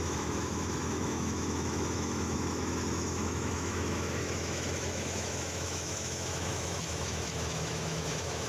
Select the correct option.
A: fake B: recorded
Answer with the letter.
A